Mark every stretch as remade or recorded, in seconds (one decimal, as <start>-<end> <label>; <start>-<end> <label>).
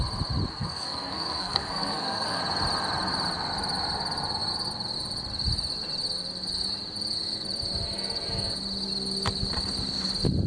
0.0-0.5 recorded; 0.5-2.4 remade; 2.4-10.5 recorded